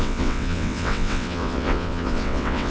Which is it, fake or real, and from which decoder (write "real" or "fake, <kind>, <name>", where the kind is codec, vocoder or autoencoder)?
fake, vocoder, WaveNeXt